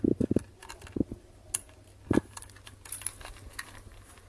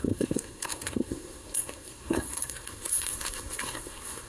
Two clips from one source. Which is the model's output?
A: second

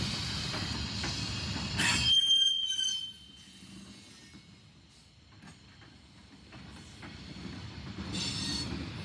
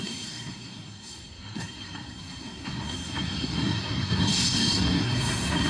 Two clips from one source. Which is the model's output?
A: second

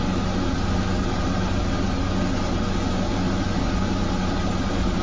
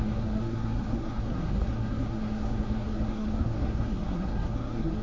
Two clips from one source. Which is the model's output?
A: second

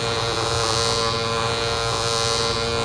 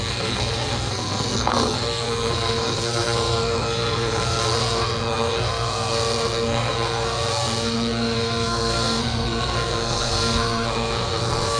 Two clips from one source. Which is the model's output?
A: second